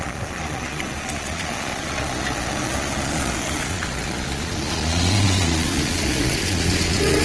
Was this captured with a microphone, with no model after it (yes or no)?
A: no